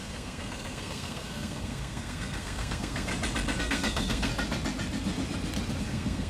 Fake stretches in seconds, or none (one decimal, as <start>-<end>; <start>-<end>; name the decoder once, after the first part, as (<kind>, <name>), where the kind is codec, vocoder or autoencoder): 0.0-3.1 (codec, SNAC); 3.6-4.3; 5.8-6.3